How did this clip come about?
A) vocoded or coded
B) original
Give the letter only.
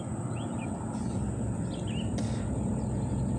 B